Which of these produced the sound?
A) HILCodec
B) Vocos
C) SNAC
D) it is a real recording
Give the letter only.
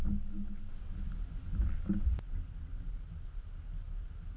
D